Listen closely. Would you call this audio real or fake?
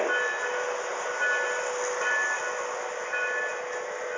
real